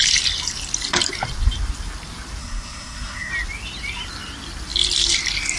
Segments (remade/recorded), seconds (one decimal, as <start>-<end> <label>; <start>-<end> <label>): 0.0-2.4 recorded; 2.4-3.3 remade; 3.3-5.6 recorded

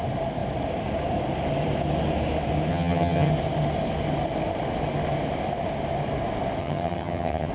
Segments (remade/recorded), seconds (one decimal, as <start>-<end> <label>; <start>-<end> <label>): 0.0-2.7 recorded; 2.7-3.3 remade; 3.3-6.6 recorded; 6.6-7.5 remade

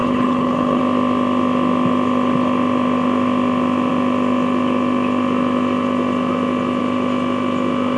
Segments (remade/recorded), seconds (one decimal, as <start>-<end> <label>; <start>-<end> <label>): 0.0-0.8 remade; 0.8-8.0 recorded